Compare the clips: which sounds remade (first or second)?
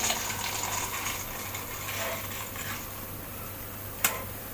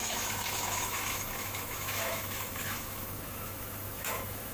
second